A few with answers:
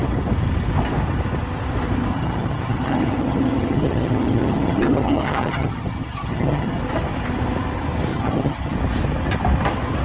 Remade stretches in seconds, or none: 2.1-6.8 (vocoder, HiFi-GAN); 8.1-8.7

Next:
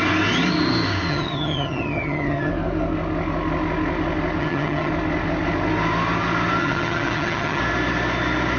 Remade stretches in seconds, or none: 1.1-2.5 (vocoder, HiFi-GAN); 4.4-4.9; 6.6-7.6

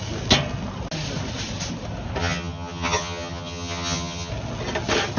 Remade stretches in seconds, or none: 2.2-4.3 (vocoder, HiFi-GAN)

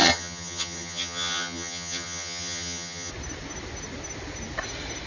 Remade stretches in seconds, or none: 0.0-3.1 (vocoder, HiFi-GAN)

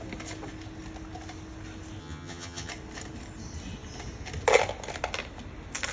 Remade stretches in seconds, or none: 2.0-2.7 (vocoder, HiFi-GAN)

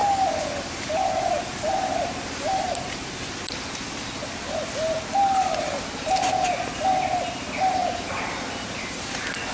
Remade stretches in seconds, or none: none

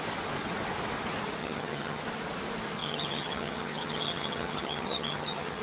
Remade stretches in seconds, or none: 1.4-2.0 (vocoder, HiFi-GAN); 2.8-5.6